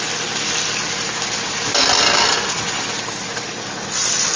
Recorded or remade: recorded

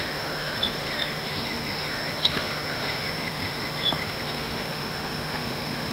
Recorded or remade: remade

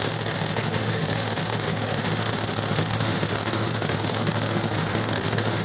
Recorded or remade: remade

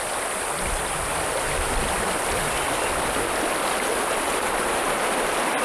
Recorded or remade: recorded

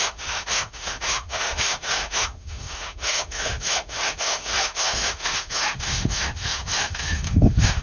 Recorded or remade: remade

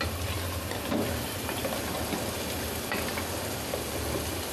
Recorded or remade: recorded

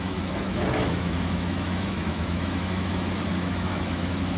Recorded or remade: remade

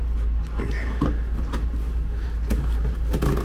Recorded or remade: recorded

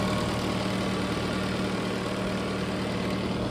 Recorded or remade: recorded